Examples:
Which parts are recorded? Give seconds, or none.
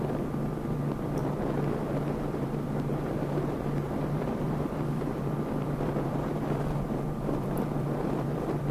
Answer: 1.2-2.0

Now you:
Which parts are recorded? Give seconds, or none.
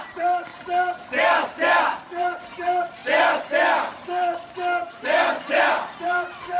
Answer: 0.5-1.8; 3.0-5.7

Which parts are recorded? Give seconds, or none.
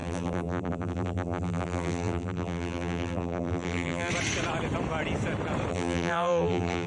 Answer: 4.1-5.7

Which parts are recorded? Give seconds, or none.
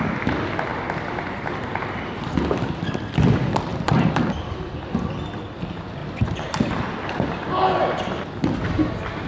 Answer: 0.0-0.7; 1.8-3.7; 4.7-9.3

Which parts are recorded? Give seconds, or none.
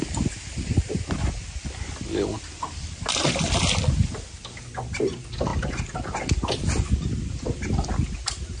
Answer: 0.0-8.6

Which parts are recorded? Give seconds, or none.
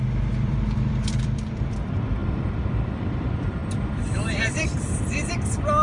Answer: none